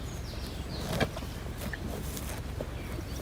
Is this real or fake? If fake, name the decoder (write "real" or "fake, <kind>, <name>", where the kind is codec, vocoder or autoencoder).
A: real